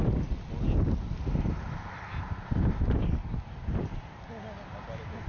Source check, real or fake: real